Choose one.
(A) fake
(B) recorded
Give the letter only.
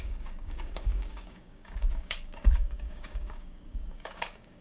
A